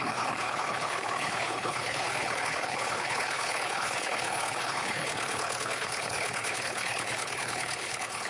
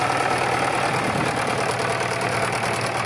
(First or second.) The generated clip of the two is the first